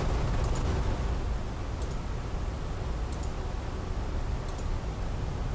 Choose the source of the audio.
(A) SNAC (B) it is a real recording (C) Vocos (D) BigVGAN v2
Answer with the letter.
B